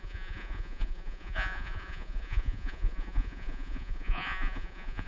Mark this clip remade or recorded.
remade